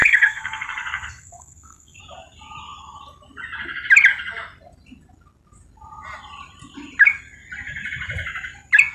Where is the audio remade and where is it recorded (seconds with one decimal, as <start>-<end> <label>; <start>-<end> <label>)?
0.0-2.0 remade; 2.0-8.9 recorded